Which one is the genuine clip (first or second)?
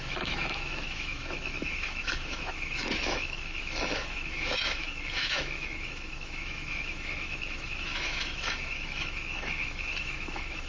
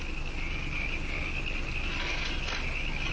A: second